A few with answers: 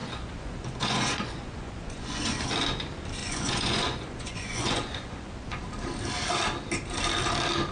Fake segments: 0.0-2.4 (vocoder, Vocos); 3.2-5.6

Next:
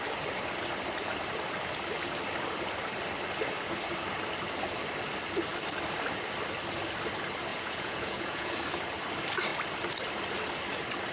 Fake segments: 7.5-8.5 (vocoder, Vocos)